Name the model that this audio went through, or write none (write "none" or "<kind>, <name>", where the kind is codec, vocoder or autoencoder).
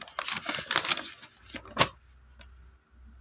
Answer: none